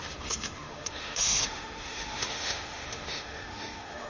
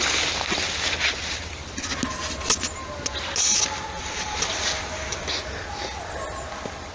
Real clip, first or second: second